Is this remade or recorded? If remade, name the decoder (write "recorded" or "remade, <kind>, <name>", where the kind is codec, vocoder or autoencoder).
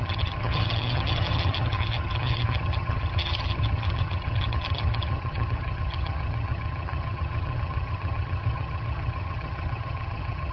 remade, vocoder, HiFi-GAN